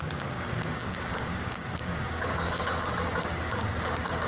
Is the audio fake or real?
fake